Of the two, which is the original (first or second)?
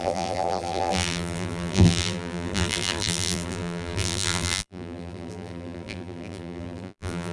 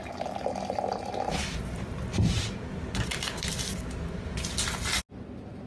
second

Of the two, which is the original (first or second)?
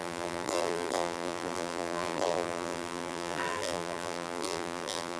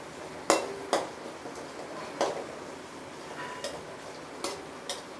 second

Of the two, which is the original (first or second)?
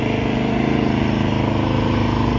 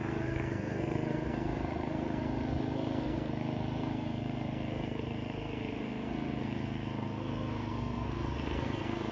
first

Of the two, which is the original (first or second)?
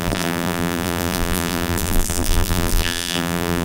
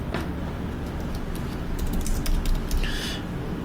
second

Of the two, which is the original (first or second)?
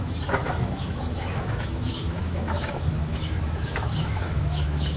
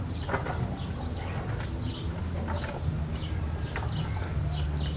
second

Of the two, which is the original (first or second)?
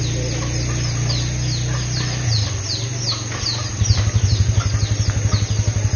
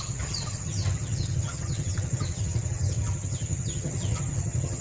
first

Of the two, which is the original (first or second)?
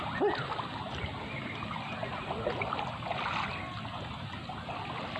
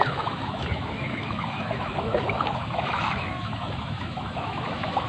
first